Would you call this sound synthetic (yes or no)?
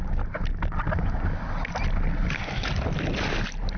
no